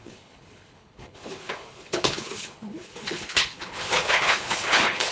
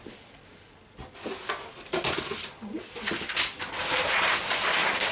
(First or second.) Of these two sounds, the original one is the second